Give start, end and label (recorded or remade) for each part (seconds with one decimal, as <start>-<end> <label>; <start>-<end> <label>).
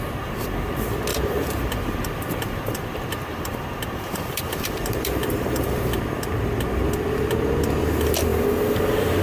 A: 0.0-1.1 recorded; 1.1-6.0 remade; 6.0-8.3 recorded; 8.3-9.2 remade